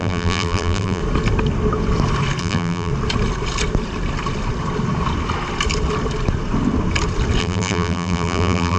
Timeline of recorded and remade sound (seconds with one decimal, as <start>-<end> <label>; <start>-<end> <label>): 0.0-1.0 remade; 1.0-2.4 recorded; 2.4-2.9 remade; 2.9-7.4 recorded; 7.4-8.8 remade